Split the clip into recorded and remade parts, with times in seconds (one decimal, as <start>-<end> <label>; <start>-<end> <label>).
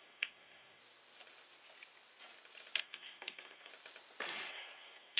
0.0-0.8 remade; 0.8-2.8 recorded; 2.8-3.7 remade; 3.7-4.5 recorded; 4.5-5.2 remade